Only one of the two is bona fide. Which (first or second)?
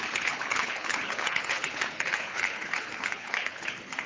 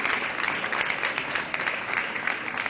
second